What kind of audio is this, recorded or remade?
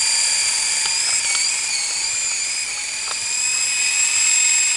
recorded